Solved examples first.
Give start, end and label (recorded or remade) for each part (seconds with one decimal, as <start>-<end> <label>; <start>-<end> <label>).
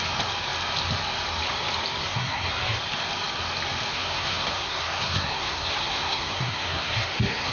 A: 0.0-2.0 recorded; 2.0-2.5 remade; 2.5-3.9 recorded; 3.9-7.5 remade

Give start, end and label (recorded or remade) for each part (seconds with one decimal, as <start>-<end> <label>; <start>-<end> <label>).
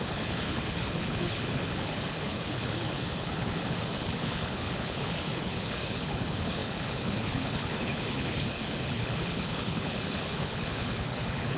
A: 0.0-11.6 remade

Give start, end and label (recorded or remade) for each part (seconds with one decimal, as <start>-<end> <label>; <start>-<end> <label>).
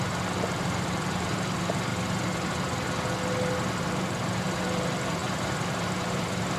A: 0.0-1.9 remade; 1.9-3.8 recorded; 3.8-6.6 remade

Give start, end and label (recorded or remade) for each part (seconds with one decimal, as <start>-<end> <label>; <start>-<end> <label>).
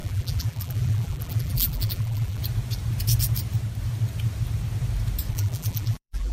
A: 0.0-2.4 remade; 2.4-5.3 recorded; 5.3-6.3 remade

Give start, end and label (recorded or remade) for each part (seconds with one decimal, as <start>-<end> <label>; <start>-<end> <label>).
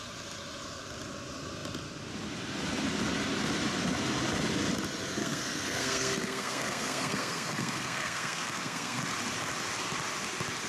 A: 0.0-5.2 recorded; 5.2-9.0 remade; 9.0-10.7 recorded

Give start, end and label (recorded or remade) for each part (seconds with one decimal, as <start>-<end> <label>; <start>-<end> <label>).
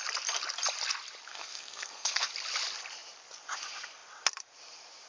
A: 0.0-1.3 recorded; 1.3-2.3 remade; 2.3-5.1 recorded